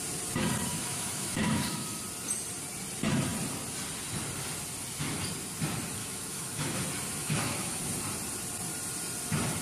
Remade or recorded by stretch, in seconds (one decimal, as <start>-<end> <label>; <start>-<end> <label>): 0.0-0.7 recorded; 0.7-2.0 remade; 2.0-6.0 recorded; 6.0-6.8 remade; 6.8-7.2 recorded; 7.2-7.8 remade; 7.8-9.6 recorded